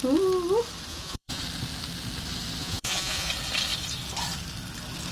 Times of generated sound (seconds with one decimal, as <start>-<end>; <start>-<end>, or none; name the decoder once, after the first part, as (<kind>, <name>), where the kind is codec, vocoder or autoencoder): 0.9-1.4 (vocoder, Vocos); 2.6-3.3